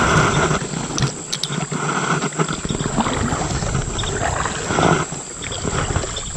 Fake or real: real